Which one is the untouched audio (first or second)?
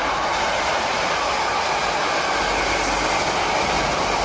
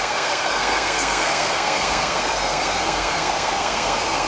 first